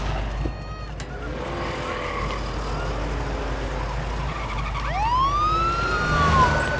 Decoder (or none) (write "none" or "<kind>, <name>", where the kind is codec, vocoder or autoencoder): none